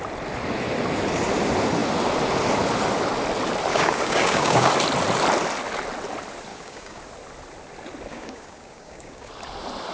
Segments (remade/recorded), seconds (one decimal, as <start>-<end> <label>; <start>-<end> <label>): 0.0-3.7 recorded; 3.7-4.7 remade; 4.7-6.5 recorded; 6.5-7.0 remade; 7.0-8.1 recorded; 8.1-9.3 remade; 9.3-9.9 recorded